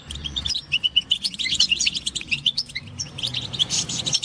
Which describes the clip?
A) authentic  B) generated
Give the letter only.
B